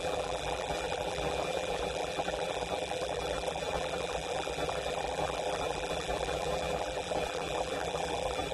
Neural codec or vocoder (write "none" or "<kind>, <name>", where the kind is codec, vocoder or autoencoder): vocoder, BigVGAN v2